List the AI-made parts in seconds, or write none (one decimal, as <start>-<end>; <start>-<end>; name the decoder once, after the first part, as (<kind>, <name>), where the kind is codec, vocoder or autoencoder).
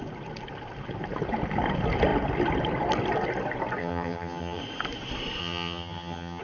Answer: 3.8-4.6 (vocoder, HiFi-GAN); 5.4-6.4